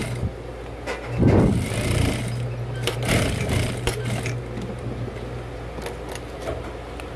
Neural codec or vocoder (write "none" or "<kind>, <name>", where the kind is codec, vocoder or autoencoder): none